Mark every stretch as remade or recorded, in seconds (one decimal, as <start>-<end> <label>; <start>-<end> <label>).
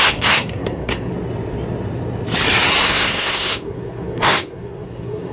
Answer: 0.0-1.1 remade; 1.1-2.8 recorded; 2.8-5.3 remade